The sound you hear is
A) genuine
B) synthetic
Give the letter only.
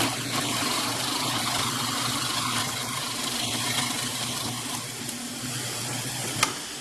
A